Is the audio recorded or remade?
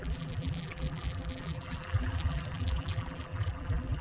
remade